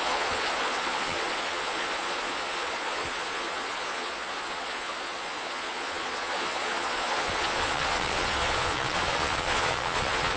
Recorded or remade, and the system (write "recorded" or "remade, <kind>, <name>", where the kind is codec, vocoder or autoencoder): remade, vocoder, Vocos